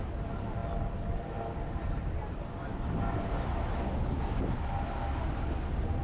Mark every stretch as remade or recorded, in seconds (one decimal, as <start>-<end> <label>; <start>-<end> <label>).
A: 0.0-6.0 recorded

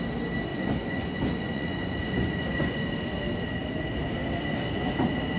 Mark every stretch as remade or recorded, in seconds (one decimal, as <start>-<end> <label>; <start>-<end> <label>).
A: 0.0-0.5 recorded; 0.5-2.9 remade; 2.9-5.4 recorded

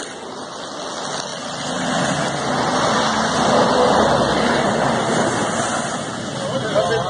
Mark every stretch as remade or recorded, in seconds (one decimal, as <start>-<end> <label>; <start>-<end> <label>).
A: 0.0-7.1 recorded

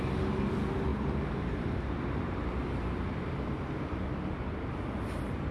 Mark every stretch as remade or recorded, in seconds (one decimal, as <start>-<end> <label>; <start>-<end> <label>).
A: 0.0-0.9 recorded; 0.9-4.2 remade; 4.2-5.5 recorded

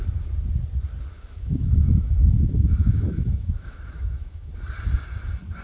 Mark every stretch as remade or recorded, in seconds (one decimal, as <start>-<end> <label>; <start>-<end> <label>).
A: 0.0-1.1 recorded; 1.1-4.5 remade; 4.5-5.6 recorded

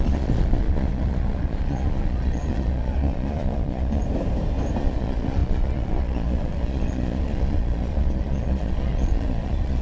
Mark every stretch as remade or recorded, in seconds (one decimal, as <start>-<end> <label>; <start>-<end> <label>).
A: 0.0-4.0 remade; 4.0-4.8 recorded; 4.8-9.8 remade

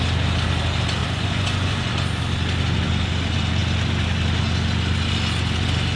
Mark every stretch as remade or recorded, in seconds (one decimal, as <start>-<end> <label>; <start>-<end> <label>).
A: 0.0-1.0 recorded; 1.0-1.9 remade; 1.9-6.0 recorded